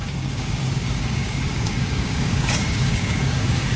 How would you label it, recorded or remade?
remade